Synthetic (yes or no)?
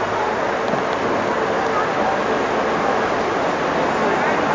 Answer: no